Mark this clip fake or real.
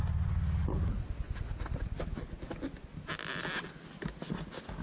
real